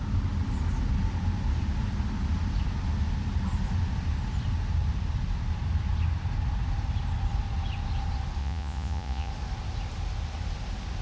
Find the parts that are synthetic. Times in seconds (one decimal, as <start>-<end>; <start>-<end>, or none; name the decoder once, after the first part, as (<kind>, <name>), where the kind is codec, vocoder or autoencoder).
8.4-9.3 (vocoder, Vocos)